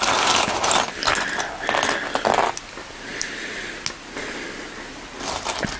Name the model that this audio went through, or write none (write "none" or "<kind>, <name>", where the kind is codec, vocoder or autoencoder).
none